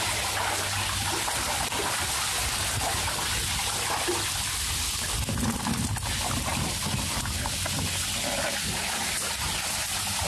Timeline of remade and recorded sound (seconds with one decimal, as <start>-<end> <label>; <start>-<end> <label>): 0.0-10.3 recorded